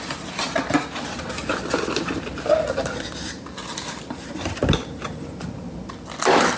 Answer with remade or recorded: recorded